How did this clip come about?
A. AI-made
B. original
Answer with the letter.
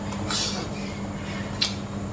B